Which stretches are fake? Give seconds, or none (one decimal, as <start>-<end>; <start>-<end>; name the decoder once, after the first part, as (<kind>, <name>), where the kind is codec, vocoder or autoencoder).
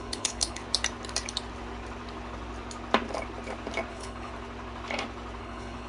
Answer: 0.0-0.6 (codec, HILCodec); 3.9-4.3; 5.4-5.9